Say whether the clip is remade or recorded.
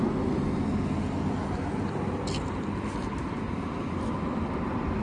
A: recorded